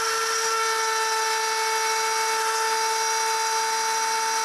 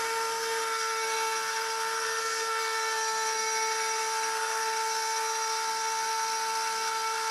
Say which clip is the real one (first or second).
first